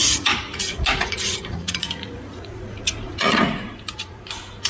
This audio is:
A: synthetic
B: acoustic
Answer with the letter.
A